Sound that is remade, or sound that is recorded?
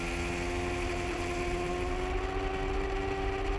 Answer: recorded